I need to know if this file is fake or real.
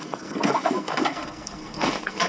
fake